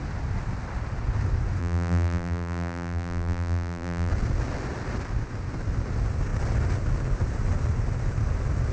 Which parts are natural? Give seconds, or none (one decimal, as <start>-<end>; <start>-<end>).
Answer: 0.0-1.6; 4.1-8.7